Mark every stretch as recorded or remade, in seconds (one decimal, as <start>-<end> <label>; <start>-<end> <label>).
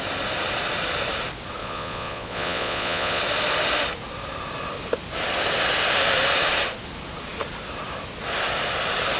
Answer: 0.0-1.6 recorded; 1.6-3.2 remade; 3.2-9.2 recorded